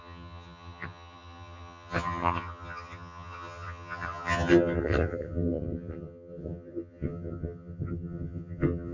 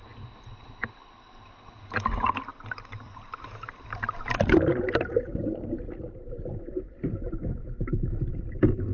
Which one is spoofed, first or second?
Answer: first